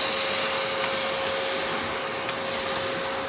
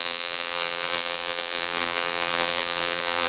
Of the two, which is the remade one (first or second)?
second